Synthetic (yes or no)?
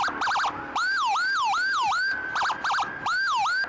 no